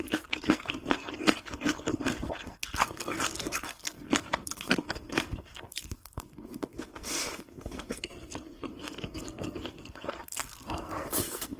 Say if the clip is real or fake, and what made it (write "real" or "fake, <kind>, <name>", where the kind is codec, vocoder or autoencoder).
fake, codec, SNAC